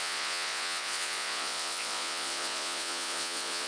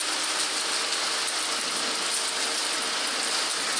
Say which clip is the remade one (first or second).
first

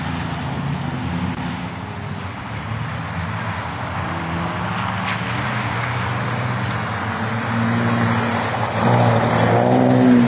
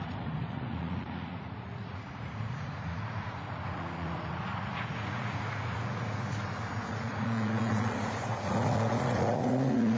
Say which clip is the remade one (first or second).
second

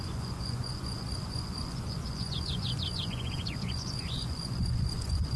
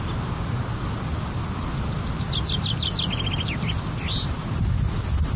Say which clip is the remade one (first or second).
first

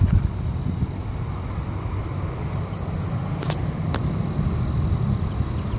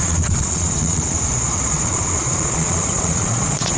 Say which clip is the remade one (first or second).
second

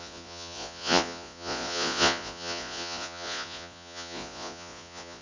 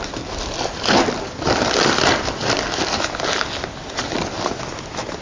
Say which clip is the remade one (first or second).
first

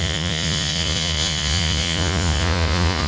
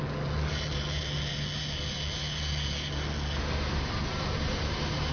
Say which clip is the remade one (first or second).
first